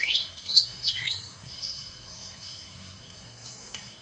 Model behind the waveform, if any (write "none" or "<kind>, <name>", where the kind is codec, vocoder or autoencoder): codec, SNAC